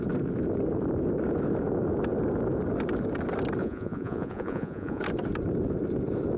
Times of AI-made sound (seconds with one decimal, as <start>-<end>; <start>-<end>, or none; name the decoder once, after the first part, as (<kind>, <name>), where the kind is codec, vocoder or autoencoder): 3.6-5.0 (vocoder, Vocos)